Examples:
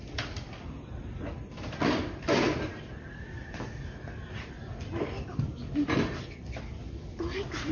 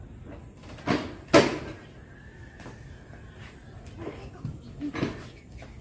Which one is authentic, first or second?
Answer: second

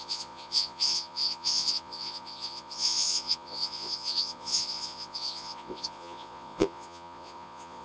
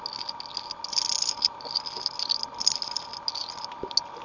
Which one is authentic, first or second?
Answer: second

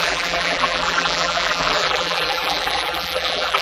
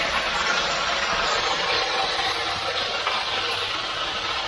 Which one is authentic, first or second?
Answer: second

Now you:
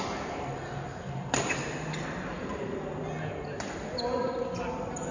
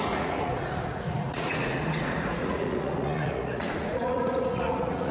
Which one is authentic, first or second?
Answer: first